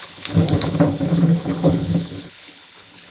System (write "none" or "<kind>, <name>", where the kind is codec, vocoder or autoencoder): codec, HILCodec